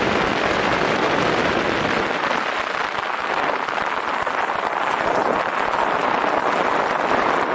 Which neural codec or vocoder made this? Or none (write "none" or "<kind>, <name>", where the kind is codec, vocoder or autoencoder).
none